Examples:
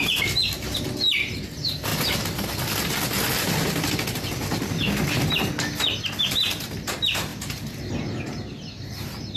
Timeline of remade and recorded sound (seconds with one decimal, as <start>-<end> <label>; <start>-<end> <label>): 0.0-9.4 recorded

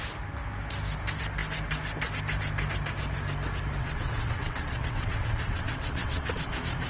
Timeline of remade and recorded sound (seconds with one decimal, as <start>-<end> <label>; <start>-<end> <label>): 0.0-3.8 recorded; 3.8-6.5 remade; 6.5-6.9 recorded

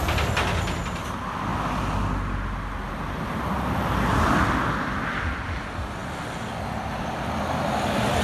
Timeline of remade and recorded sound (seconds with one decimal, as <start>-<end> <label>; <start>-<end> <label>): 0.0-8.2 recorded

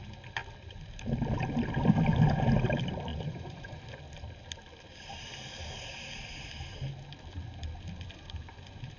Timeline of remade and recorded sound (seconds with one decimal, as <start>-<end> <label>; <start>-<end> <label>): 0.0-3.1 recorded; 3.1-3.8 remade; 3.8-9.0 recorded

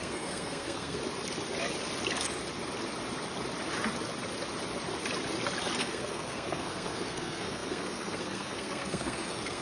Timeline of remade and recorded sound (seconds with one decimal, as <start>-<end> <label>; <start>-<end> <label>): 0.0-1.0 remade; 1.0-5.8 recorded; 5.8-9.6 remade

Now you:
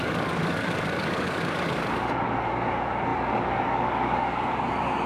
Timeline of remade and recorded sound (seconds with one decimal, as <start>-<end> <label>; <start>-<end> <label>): 0.0-5.1 remade